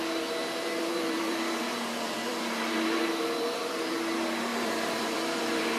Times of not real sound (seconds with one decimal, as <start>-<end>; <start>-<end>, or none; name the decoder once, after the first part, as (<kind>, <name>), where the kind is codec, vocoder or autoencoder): 0.4-3.9 (vocoder, BigVGAN v2); 4.5-5.8